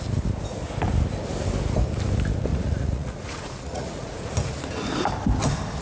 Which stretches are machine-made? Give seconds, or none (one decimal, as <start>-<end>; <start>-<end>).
2.5-4.3